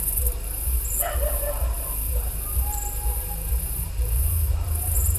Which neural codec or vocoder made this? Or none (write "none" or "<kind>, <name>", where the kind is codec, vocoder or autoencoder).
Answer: vocoder, BigVGAN v2